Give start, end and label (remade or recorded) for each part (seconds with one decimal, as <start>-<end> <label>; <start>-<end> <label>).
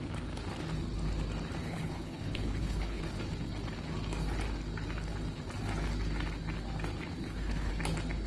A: 0.0-1.6 recorded; 1.6-3.0 remade; 3.0-7.2 recorded; 7.2-7.7 remade; 7.7-8.3 recorded